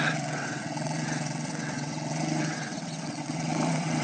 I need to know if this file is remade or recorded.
remade